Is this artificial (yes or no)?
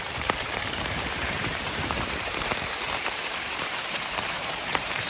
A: yes